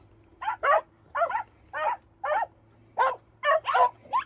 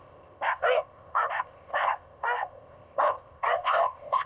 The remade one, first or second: second